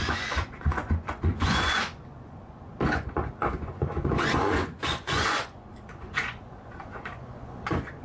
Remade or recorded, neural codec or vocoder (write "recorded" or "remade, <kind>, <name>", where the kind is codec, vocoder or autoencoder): remade, vocoder, Vocos